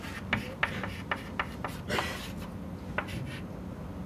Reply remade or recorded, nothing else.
recorded